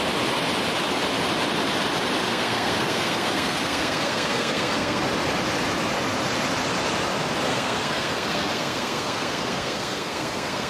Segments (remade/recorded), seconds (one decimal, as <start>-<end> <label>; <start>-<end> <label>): 0.0-2.3 recorded; 2.3-5.0 remade; 5.0-7.5 recorded; 7.5-10.7 remade